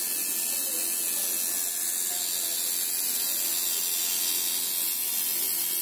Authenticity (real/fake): real